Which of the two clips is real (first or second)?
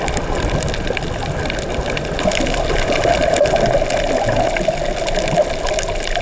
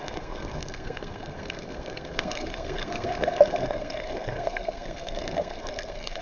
first